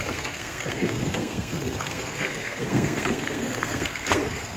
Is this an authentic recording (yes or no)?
no